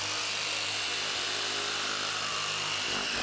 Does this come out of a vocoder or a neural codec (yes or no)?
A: no